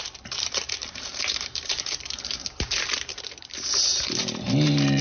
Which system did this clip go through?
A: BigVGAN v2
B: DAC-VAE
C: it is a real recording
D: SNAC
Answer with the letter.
A